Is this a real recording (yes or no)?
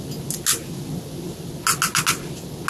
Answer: yes